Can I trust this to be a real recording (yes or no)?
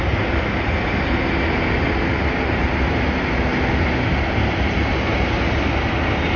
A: yes